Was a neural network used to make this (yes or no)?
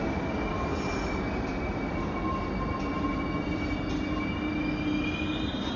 no